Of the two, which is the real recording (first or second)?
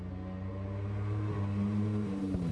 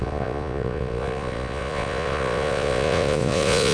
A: first